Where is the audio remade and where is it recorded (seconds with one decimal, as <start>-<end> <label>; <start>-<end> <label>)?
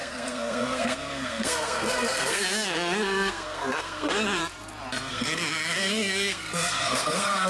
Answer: 0.0-4.4 remade; 4.4-5.1 recorded; 5.1-7.5 remade